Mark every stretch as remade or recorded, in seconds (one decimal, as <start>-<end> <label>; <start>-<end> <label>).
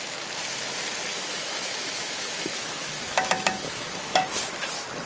0.0-1.1 recorded; 1.1-4.2 remade; 4.2-5.1 recorded